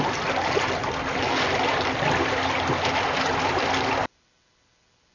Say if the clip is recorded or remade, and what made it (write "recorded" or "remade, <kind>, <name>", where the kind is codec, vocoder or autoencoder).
recorded